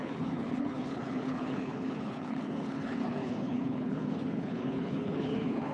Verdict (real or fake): fake